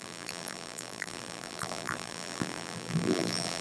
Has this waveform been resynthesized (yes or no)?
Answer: yes